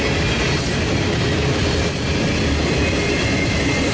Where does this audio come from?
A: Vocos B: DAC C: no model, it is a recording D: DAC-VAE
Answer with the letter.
C